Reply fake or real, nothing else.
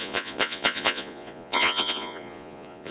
fake